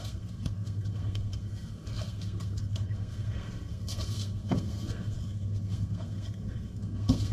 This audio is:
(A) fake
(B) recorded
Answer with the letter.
A